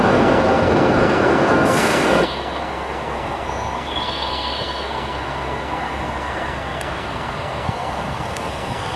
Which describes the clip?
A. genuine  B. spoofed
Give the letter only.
B